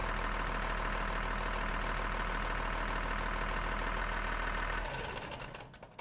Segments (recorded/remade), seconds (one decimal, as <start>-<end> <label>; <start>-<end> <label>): 0.0-6.0 recorded